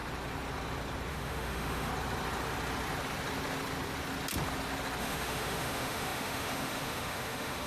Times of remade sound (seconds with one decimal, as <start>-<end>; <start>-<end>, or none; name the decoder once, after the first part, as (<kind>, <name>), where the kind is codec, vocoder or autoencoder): 1.1-1.9 (autoencoder, DAC-VAE); 5.0-7.7